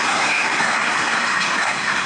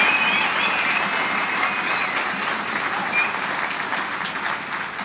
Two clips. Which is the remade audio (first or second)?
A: first